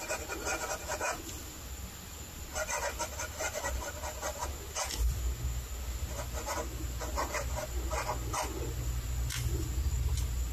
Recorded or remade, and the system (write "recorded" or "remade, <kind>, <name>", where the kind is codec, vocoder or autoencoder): recorded